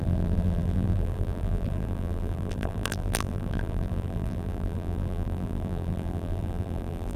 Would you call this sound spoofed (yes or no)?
yes